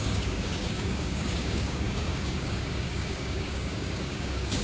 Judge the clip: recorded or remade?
remade